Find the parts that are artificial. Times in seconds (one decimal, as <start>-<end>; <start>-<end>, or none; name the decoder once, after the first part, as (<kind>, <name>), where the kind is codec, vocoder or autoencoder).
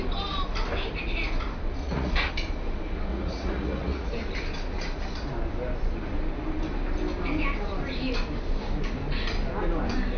1.8-2.3 (vocoder, Vocos); 3.1-4.1